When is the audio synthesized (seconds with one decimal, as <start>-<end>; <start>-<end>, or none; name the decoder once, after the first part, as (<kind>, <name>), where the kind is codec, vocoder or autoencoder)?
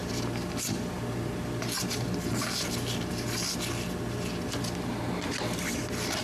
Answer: none